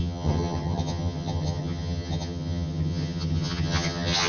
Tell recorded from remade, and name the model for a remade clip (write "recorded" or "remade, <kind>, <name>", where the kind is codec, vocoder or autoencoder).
remade, vocoder, HiFi-GAN